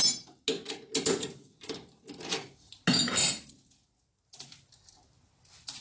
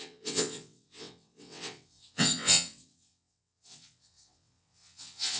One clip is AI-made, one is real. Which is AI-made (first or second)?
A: second